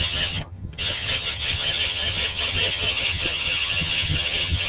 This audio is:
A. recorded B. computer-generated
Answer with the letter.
B